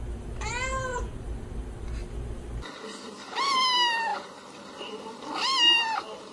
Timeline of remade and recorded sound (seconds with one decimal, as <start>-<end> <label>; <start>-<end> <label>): 0.0-0.9 recorded; 0.9-1.6 remade; 1.6-2.0 recorded; 2.0-3.6 remade; 3.6-4.1 recorded; 4.1-6.3 remade